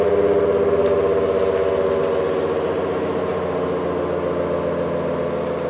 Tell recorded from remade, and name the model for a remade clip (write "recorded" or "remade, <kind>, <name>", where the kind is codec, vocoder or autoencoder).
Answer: recorded